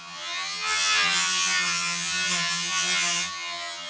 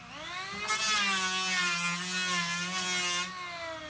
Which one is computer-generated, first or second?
first